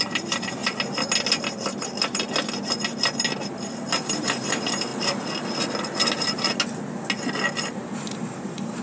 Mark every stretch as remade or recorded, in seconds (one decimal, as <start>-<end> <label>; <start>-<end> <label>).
0.0-0.6 remade; 0.6-4.2 recorded; 4.2-4.9 remade; 4.9-7.7 recorded; 7.7-8.8 remade